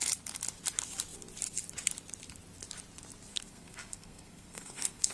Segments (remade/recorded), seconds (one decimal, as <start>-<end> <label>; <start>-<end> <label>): 0.0-3.3 recorded; 3.3-5.1 remade